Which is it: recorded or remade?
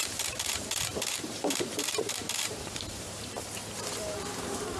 remade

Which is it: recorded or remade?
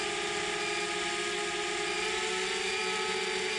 recorded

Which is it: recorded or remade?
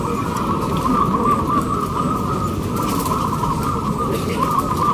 recorded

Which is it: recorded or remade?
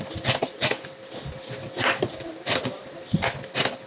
remade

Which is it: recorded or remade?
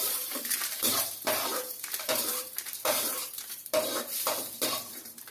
remade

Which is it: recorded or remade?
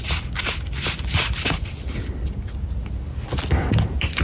recorded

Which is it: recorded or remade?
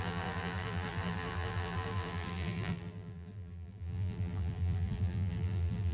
remade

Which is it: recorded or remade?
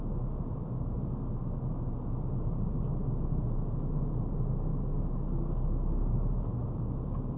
recorded